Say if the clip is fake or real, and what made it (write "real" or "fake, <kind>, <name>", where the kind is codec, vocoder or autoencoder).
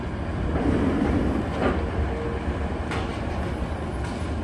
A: real